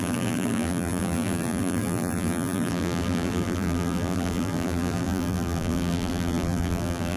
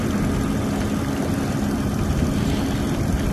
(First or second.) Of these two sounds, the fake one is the first